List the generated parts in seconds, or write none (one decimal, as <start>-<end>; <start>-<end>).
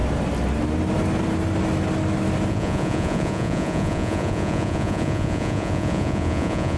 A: 2.5-6.8